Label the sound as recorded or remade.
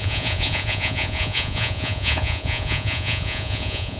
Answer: remade